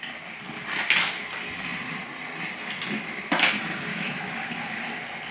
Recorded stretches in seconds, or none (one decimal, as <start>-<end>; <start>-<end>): 0.0-3.9; 4.4-5.3

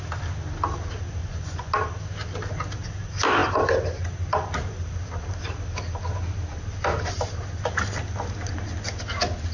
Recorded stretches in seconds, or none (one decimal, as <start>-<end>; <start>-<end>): 0.0-1.2; 1.7-9.5